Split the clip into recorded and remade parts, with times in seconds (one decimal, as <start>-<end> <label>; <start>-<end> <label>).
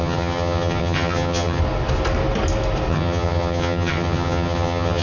0.0-1.6 remade; 1.6-2.9 recorded; 2.9-5.0 remade